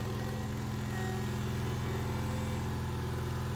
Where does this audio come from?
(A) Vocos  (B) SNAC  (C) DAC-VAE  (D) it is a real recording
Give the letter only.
D